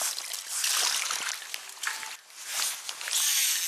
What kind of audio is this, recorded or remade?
recorded